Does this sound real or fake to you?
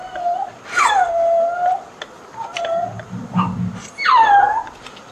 real